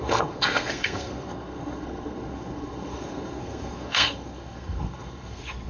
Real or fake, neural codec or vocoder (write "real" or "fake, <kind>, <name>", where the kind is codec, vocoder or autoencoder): fake, codec, SNAC